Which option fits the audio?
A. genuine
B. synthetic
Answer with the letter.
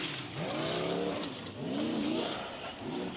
A